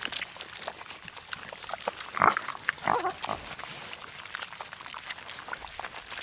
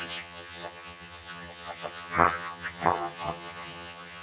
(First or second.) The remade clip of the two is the second